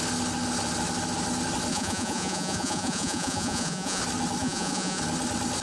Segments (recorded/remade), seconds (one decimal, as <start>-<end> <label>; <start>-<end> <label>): 0.0-1.7 recorded; 1.7-4.0 remade; 4.0-4.4 recorded; 4.4-5.0 remade; 5.0-5.6 recorded